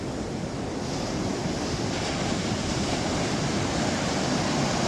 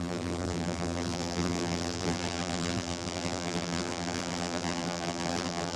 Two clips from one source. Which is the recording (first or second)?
first